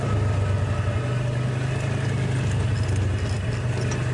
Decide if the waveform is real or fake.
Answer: real